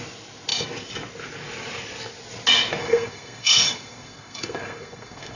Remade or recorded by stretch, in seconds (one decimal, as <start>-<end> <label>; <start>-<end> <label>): 0.0-2.8 recorded; 2.8-5.4 remade